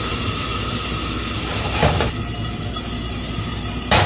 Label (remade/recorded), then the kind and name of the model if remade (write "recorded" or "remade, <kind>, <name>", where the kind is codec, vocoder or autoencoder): recorded